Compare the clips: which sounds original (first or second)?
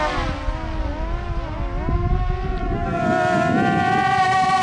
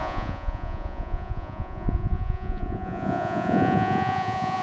first